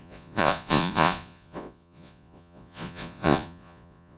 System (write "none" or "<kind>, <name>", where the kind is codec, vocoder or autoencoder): vocoder, Vocos